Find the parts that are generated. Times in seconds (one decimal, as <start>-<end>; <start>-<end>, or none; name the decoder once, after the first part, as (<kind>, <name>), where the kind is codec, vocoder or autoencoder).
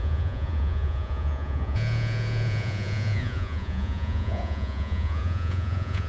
0.0-6.1 (vocoder, Vocos)